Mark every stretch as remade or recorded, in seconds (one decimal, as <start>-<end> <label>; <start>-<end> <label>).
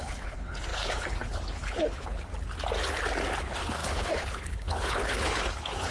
0.0-2.3 remade; 2.3-3.4 recorded; 3.4-5.9 remade